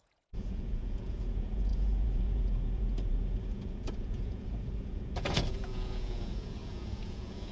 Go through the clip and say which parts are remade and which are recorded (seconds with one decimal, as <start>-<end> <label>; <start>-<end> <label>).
0.0-7.5 remade